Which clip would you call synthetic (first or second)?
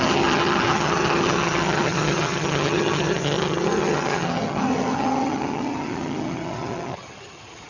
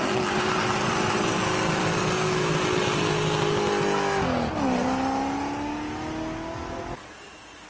first